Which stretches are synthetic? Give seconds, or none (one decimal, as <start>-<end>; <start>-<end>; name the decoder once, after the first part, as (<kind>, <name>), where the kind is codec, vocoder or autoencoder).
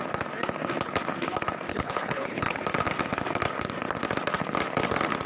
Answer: 1.7-2.6 (codec, HILCodec)